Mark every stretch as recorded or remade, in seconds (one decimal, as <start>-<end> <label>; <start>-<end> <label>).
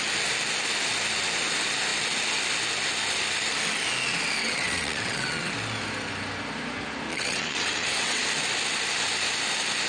0.0-4.4 recorded; 4.4-5.5 remade; 5.5-7.1 recorded; 7.1-8.2 remade; 8.2-9.9 recorded